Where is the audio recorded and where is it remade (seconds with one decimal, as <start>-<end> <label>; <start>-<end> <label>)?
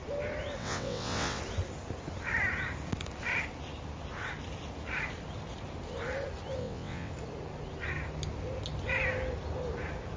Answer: 0.0-0.6 recorded; 0.6-1.4 remade; 1.4-6.6 recorded; 6.6-7.1 remade; 7.1-10.2 recorded